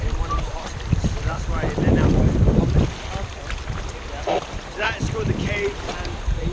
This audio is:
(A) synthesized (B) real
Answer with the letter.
A